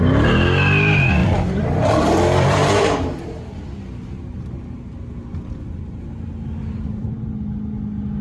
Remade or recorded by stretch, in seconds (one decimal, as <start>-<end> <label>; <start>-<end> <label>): 0.0-1.2 recorded; 1.2-3.6 remade; 3.6-8.2 recorded